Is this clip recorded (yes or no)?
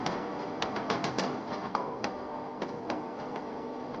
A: no